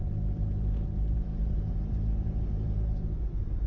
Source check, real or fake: fake